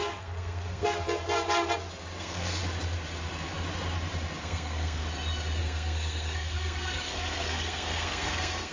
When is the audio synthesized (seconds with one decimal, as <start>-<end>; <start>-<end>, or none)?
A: 0.0-1.2; 2.2-2.6; 4.4-5.0; 5.6-8.7